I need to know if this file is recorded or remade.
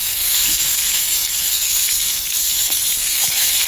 remade